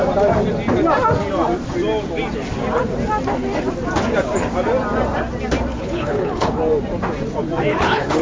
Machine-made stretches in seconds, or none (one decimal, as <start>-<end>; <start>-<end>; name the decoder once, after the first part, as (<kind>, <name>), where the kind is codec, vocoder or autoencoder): 5.7-6.6 (codec, HILCodec); 7.7-8.2